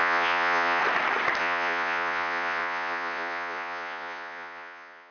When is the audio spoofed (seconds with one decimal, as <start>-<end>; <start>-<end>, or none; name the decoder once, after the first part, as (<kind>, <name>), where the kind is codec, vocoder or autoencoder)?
0.0-0.8 (vocoder, Vocos); 1.4-5.1